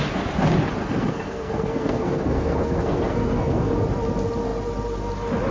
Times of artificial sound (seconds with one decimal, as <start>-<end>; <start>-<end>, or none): 0.8-3.7